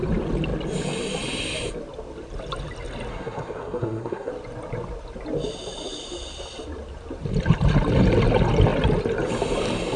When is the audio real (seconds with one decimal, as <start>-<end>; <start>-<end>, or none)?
0.0-3.1; 4.3-10.0